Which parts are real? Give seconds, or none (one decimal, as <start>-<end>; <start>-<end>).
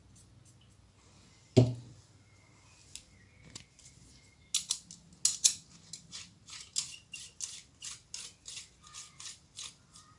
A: 0.0-10.2